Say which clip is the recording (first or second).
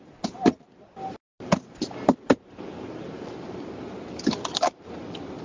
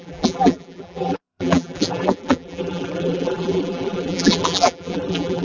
first